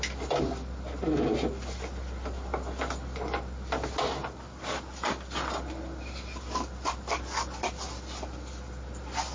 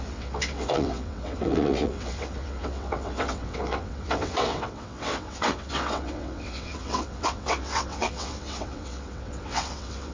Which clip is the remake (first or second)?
second